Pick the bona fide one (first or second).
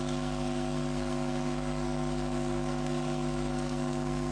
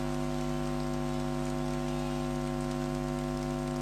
second